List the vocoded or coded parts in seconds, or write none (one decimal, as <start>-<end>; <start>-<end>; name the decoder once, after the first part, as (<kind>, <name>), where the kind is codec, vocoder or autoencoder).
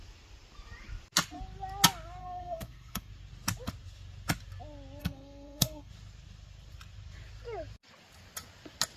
2.2-3.1 (codec, SNAC); 5.0-5.9